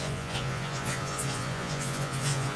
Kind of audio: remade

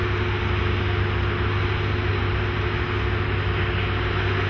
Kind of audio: recorded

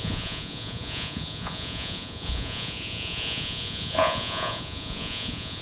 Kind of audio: remade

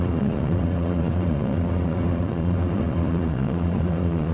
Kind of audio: remade